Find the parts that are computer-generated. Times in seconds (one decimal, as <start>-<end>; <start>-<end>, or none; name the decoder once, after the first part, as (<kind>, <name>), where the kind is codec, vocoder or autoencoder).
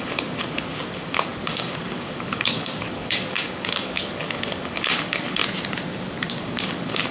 0.0-5.4 (codec, DAC); 6.3-7.1